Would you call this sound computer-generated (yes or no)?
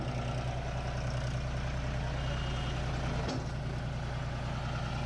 no